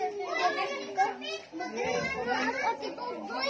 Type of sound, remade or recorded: recorded